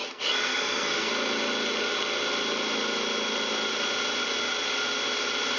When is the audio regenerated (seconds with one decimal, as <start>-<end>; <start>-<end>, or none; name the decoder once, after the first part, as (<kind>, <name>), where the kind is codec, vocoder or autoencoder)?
0.0-1.1 (codec, SNAC)